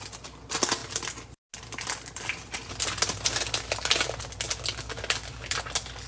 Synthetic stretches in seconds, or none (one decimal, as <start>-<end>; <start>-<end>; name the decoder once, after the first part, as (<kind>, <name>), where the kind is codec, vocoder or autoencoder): none